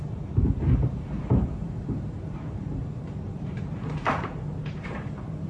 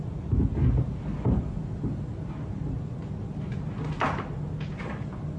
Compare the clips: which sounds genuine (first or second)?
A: second